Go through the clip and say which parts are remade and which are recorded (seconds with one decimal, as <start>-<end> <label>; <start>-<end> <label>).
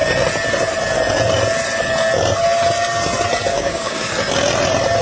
0.0-3.5 recorded; 3.5-4.1 remade; 4.1-5.0 recorded